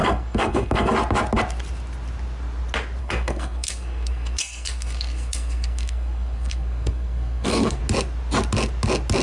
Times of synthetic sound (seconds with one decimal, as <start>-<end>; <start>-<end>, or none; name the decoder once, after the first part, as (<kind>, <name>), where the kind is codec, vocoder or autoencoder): 0.0-0.9 (codec, SNAC); 3.0-7.8